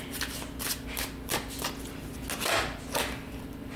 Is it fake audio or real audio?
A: real